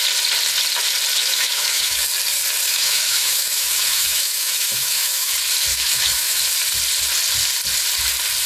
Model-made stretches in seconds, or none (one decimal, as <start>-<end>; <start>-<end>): 1.1-2.0; 2.7-5.3; 5.7-6.4